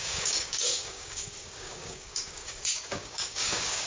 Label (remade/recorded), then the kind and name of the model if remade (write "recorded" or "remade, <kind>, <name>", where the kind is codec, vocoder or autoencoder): remade, codec, DAC